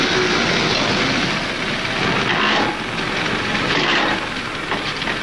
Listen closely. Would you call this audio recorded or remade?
recorded